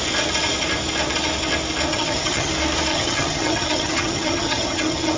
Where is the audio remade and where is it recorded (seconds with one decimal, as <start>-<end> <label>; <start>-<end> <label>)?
0.0-1.9 recorded; 1.9-2.5 remade; 2.5-2.9 recorded; 2.9-5.2 remade